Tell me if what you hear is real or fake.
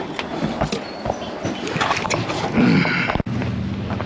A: real